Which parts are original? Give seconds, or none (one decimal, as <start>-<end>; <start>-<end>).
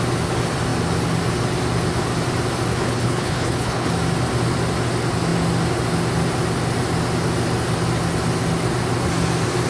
0.0-2.7; 3.9-9.7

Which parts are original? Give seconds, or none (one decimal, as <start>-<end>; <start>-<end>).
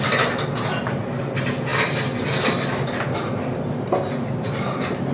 0.0-1.7